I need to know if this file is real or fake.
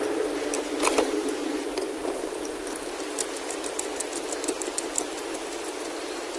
real